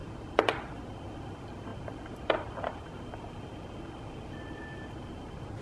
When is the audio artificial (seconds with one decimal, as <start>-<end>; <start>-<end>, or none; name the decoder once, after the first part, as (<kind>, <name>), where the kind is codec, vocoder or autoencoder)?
none

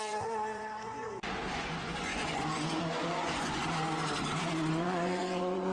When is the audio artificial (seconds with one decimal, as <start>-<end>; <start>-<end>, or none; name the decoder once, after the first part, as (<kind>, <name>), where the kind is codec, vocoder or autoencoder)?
0.0-3.6 (vocoder, Vocos); 4.7-5.7